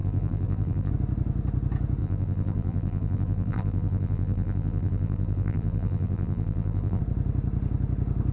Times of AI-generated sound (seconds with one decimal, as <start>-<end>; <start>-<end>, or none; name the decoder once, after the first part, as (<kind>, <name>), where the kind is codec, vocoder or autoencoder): 0.0-0.9 (vocoder, BigVGAN v2); 2.0-7.0